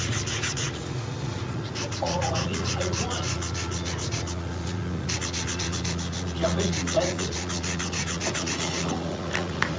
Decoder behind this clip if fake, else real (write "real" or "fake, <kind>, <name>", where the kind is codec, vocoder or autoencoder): fake, vocoder, Vocos